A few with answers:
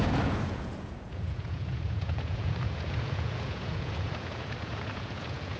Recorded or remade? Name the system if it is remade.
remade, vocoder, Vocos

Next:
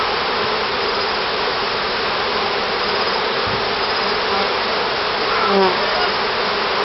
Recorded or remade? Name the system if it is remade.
recorded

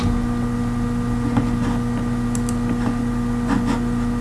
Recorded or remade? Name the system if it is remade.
recorded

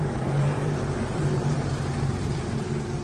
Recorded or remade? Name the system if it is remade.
remade, vocoder, BigVGAN v2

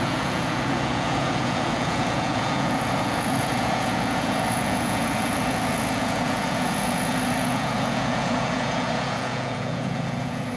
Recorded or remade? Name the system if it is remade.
remade, vocoder, Vocos